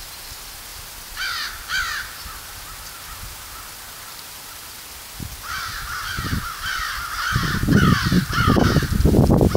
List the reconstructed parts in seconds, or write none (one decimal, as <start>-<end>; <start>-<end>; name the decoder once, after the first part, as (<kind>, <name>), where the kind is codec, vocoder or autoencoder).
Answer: none